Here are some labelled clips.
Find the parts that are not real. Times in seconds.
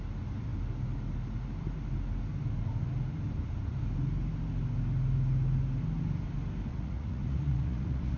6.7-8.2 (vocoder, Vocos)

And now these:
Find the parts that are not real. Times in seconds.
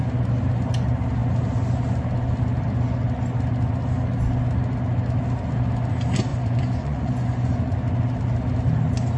6.3-7.8 (vocoder, Vocos)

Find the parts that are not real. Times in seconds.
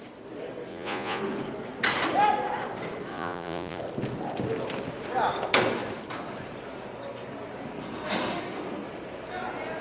0.7-1.2 (vocoder, Vocos); 3.1-3.8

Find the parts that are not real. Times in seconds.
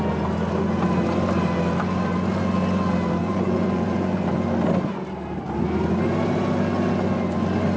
3.2-4.2 (vocoder, Vocos)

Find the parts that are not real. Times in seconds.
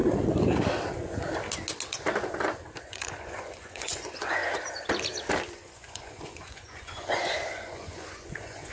2.8-4.4 (vocoder, Vocos); 5.4-8.7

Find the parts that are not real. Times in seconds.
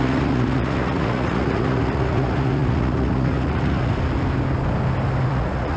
0.0-3.9 (vocoder, Vocos); 5.3-5.8